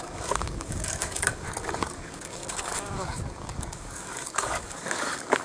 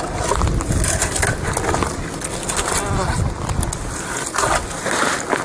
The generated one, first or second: first